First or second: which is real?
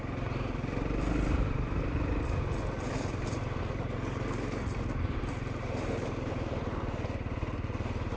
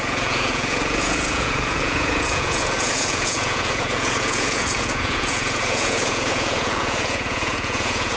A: first